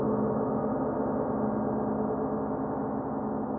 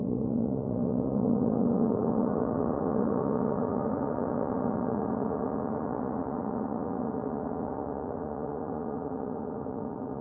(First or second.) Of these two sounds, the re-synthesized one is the second